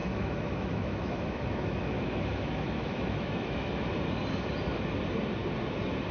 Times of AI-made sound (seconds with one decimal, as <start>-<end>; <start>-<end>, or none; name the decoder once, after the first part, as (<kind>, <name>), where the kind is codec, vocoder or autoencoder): 0.0-3.7 (autoencoder, DAC-VAE)